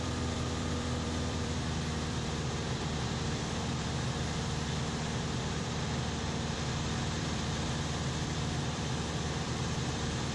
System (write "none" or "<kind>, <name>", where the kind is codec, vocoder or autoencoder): vocoder, BigVGAN v2